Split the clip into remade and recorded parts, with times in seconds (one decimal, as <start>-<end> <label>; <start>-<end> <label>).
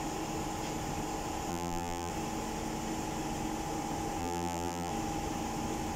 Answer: 0.0-1.5 recorded; 1.5-2.1 remade; 2.1-4.2 recorded; 4.2-4.9 remade; 4.9-6.0 recorded